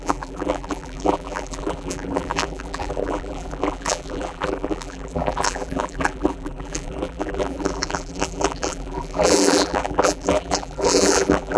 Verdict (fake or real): fake